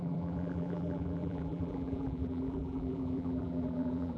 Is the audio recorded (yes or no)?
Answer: no